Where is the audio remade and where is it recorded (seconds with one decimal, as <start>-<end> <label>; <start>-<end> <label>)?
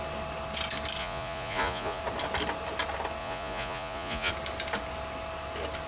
0.0-1.0 recorded; 1.0-2.0 remade; 2.0-3.2 recorded; 3.2-4.3 remade; 4.3-5.9 recorded